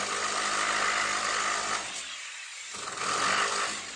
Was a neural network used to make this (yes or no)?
no